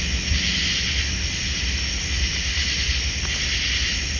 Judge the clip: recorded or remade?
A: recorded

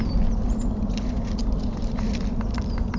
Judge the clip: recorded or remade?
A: recorded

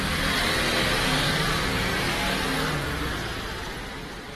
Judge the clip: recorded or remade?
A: recorded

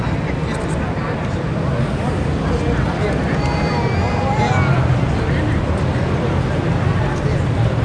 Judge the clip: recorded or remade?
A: recorded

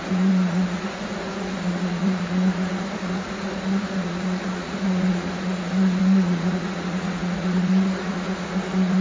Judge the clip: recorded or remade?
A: remade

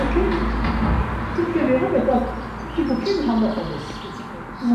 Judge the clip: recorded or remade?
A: recorded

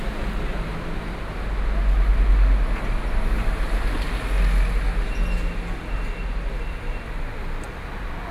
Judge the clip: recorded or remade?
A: recorded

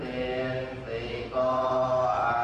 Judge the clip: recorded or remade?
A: recorded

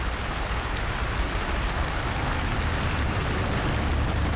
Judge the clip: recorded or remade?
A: recorded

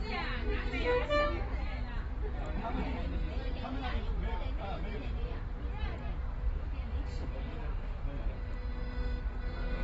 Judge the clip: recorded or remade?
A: recorded